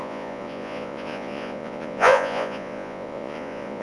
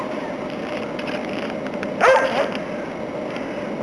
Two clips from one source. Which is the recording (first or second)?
second